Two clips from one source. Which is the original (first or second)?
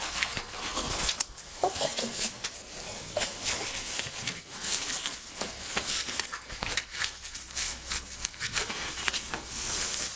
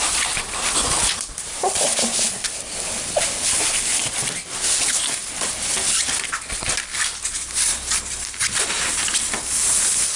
second